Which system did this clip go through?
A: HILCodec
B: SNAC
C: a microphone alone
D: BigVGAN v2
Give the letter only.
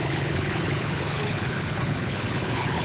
A